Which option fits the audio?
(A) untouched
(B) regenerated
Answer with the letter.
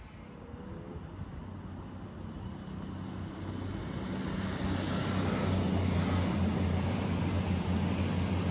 A